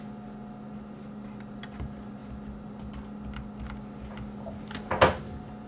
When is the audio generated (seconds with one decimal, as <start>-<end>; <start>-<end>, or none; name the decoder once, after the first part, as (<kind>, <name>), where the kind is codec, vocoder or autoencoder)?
none